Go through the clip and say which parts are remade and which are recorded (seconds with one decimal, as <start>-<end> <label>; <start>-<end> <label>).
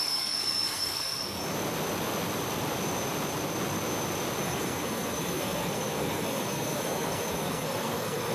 0.0-1.4 remade; 1.4-4.4 recorded; 4.4-8.3 remade